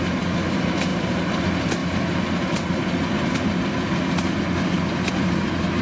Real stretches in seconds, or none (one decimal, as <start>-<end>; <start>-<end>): 0.0-0.9; 1.4-5.8